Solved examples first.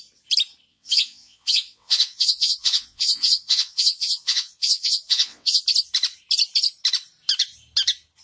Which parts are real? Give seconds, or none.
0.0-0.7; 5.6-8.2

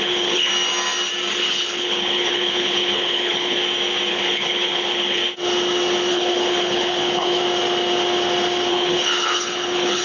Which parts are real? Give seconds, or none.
0.5-1.3; 3.6-4.1; 5.2-6.1; 7.4-8.7

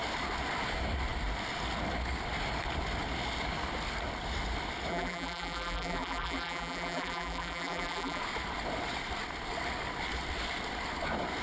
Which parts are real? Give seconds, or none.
0.0-4.9; 8.2-11.4